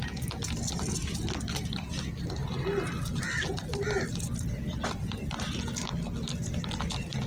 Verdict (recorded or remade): recorded